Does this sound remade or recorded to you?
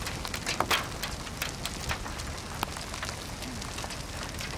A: recorded